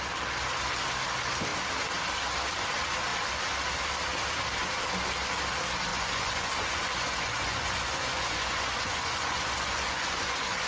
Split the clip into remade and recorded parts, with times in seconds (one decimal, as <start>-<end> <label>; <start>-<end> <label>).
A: 0.0-5.9 recorded; 5.9-10.7 remade